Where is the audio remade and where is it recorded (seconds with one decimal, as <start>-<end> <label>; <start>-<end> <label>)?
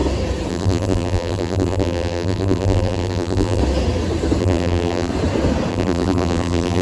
0.0-0.5 recorded; 0.5-3.6 remade; 3.6-4.4 recorded; 4.4-5.1 remade; 5.1-5.7 recorded; 5.7-6.8 remade